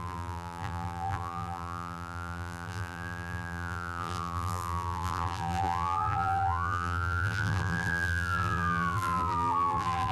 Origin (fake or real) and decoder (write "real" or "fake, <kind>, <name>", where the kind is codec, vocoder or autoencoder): fake, vocoder, BigVGAN v2